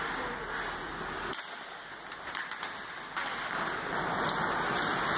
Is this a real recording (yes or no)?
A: yes